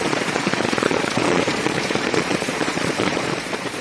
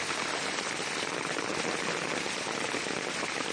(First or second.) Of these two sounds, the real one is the second